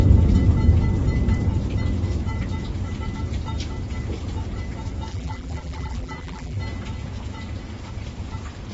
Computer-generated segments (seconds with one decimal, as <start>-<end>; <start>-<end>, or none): 5.1-6.6